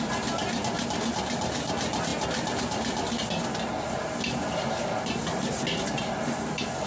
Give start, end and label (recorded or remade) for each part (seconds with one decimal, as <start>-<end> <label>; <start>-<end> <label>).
0.0-6.9 recorded